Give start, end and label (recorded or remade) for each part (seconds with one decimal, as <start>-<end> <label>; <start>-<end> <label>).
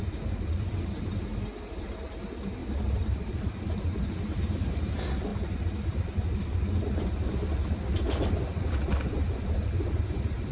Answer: 0.0-2.6 recorded; 2.6-4.8 remade; 4.8-10.5 recorded